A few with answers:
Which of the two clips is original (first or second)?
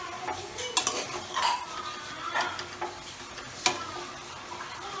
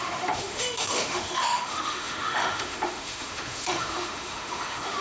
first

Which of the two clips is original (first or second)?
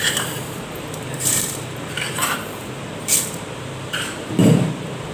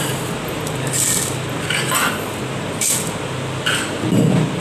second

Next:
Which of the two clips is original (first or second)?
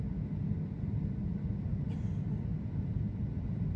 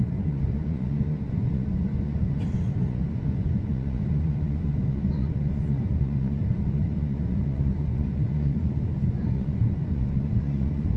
first